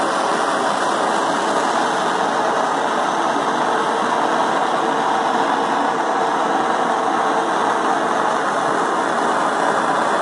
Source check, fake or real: real